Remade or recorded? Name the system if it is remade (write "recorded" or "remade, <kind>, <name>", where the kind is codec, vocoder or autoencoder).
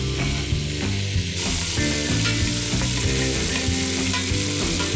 recorded